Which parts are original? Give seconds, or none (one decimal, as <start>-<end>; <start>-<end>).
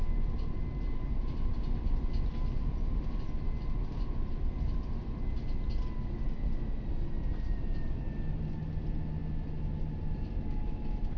0.0-11.2